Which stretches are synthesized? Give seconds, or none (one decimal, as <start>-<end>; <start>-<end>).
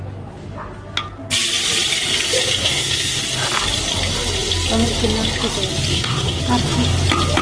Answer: 2.6-3.2; 5.9-6.4